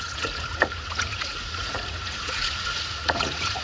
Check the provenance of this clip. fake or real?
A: fake